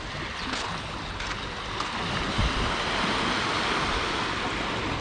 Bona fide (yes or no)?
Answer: yes